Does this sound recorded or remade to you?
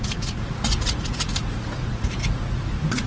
remade